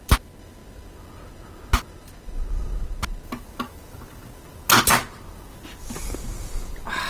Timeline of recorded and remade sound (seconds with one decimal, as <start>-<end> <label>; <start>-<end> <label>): 0.0-7.1 recorded